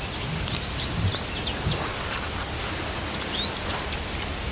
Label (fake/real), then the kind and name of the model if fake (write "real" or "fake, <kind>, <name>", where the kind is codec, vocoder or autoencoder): real